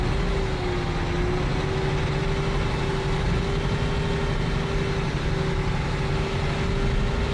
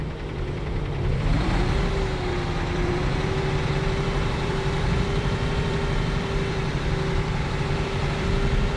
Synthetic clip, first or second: second